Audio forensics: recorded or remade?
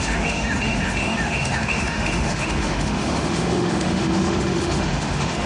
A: remade